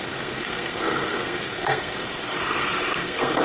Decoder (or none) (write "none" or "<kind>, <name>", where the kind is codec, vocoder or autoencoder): codec, SNAC